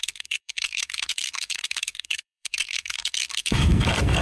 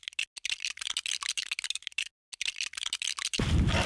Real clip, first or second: second